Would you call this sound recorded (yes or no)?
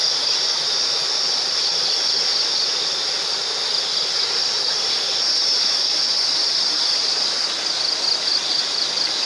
yes